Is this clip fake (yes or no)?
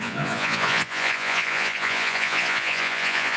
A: yes